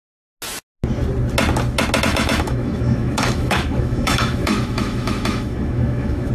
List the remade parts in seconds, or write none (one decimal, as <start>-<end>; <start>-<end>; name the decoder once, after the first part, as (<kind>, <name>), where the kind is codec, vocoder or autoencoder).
2.1-6.3 (autoencoder, DAC-VAE)